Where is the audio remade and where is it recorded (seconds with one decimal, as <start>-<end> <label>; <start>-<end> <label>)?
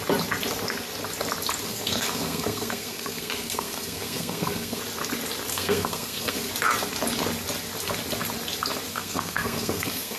0.0-1.7 recorded; 1.7-4.8 remade; 4.8-5.5 recorded; 5.5-6.5 remade; 6.5-8.9 recorded; 8.9-10.2 remade